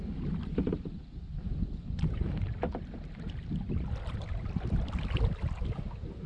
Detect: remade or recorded recorded